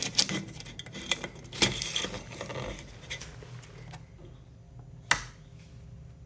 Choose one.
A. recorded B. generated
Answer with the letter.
A